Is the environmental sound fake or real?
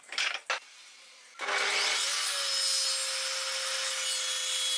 real